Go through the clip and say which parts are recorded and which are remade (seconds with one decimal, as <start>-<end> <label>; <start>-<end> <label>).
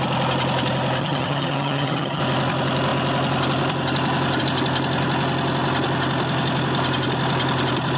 0.0-1.0 recorded; 1.0-2.2 remade; 2.2-8.0 recorded